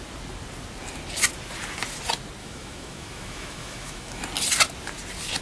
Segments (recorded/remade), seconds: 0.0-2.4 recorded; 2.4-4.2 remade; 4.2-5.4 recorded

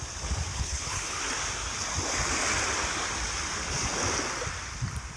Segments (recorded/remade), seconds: 0.0-0.5 recorded; 0.5-1.2 remade; 1.2-5.2 recorded